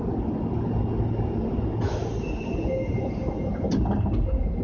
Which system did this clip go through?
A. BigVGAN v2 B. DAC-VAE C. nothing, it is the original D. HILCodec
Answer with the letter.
C